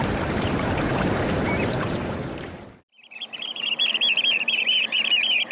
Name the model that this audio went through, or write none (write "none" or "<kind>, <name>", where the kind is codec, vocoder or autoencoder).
vocoder, BigVGAN v2